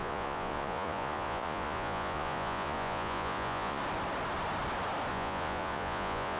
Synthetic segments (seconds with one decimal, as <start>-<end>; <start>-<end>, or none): 0.0-3.8; 5.1-6.4